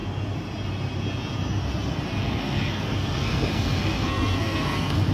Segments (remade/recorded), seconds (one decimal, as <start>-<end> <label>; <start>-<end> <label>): 0.0-2.2 recorded; 2.2-5.1 remade